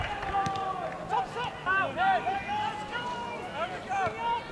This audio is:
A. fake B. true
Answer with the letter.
B